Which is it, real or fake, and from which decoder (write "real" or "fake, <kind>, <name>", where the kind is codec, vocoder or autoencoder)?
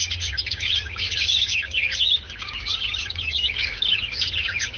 fake, codec, DAC